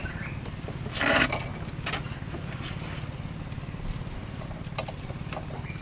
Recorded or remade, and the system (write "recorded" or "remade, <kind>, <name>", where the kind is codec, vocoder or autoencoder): recorded